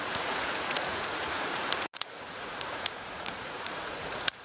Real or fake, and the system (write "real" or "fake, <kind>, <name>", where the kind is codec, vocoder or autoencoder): fake, vocoder, Vocos